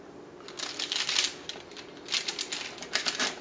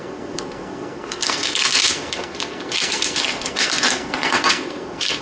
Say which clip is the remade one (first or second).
second